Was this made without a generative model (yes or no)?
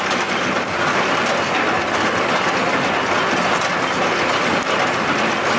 yes